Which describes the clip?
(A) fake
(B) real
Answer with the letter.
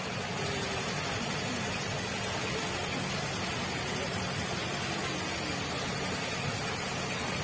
B